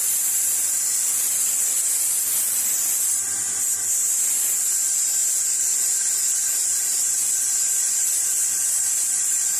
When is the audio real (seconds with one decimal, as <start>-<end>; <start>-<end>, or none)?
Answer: none